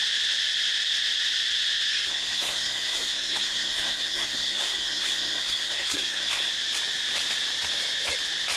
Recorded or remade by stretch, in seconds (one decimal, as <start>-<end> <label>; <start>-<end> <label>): 0.0-1.9 recorded; 1.9-6.5 remade; 6.5-8.6 recorded